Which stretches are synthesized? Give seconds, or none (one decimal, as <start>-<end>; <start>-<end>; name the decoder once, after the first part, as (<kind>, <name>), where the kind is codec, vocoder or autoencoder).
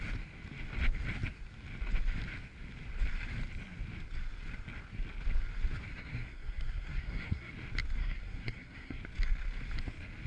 5.9-7.5 (codec, SNAC); 8.0-9.0